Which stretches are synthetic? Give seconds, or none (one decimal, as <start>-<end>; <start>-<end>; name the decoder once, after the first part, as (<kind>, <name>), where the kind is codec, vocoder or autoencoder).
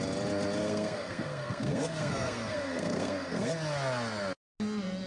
0.6-3.5 (codec, SNAC)